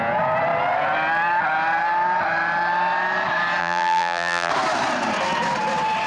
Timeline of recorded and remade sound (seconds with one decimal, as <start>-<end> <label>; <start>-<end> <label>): 0.0-3.6 recorded; 3.6-4.5 remade; 4.5-6.1 recorded